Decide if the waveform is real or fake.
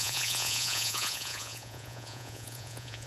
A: fake